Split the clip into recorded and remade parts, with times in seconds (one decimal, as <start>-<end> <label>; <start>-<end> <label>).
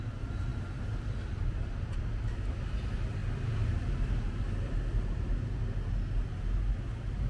0.0-7.3 recorded